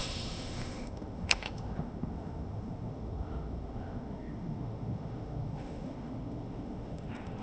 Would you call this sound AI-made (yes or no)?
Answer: yes